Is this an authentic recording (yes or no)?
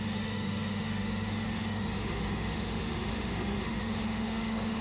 no